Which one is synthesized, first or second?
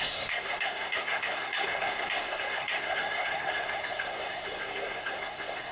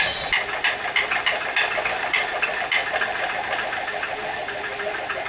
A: first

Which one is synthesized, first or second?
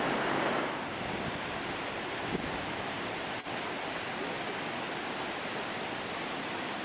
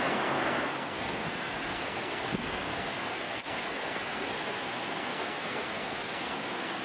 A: second